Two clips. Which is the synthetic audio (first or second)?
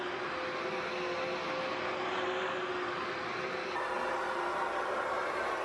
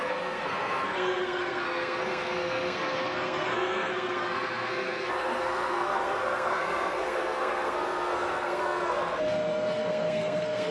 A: second